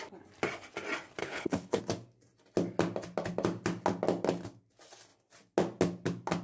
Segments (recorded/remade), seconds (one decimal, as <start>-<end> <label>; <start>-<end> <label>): 0.0-1.2 recorded; 1.2-1.8 remade; 1.8-6.4 recorded